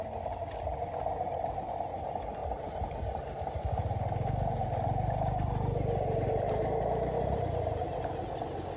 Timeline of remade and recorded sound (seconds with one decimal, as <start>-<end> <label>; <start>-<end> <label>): 0.0-2.4 recorded; 2.4-3.6 remade; 3.6-8.8 recorded